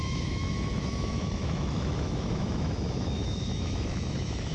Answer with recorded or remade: remade